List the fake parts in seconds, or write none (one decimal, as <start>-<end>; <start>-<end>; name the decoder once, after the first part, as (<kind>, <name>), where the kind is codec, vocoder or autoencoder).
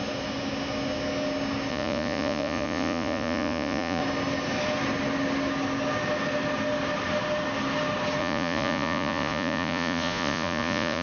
1.7-4.0 (vocoder, Vocos); 8.2-11.0